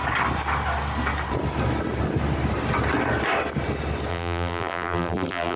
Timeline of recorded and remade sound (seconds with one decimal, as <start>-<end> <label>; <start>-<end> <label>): 0.0-4.1 recorded; 4.1-5.6 remade